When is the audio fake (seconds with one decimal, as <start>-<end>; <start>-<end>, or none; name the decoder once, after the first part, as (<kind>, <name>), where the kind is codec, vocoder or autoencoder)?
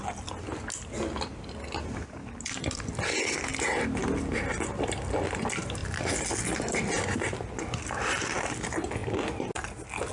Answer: none